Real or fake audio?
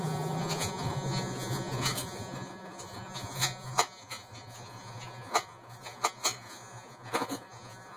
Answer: fake